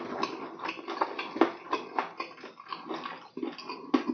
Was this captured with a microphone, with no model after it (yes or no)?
yes